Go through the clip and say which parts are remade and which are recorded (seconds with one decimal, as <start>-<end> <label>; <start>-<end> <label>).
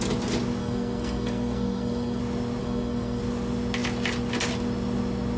0.0-0.6 recorded; 0.6-2.2 remade; 2.2-2.6 recorded; 2.6-3.2 remade; 3.2-5.4 recorded